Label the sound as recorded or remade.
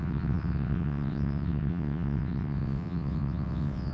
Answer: remade